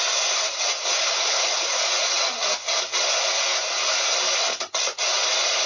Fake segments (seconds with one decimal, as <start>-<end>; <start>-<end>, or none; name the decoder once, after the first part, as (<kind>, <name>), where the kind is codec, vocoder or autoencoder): 1.0-1.8 (codec, HILCodec)